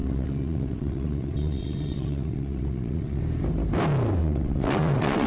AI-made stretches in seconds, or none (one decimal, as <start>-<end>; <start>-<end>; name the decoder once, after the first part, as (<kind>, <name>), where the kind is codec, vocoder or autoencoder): 0.0-3.2 (vocoder, WaveNeXt); 4.2-5.3